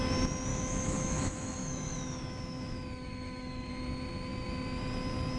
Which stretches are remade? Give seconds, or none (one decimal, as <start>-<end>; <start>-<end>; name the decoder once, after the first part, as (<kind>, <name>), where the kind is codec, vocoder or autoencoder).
0.5-3.7 (autoencoder, DAC-VAE)